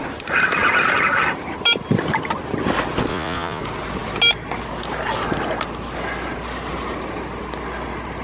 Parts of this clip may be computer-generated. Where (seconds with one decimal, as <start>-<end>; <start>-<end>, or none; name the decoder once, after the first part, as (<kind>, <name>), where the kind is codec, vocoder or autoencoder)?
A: 3.1-3.6 (vocoder, Vocos)